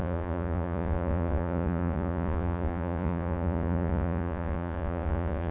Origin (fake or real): fake